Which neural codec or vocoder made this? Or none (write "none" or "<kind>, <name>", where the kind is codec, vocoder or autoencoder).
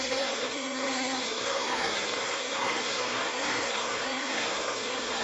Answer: codec, SNAC